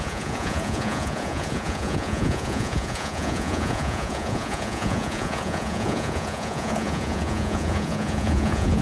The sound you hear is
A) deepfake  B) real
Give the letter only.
A